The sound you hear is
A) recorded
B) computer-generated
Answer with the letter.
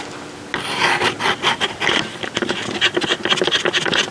A